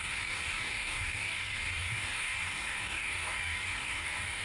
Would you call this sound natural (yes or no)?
no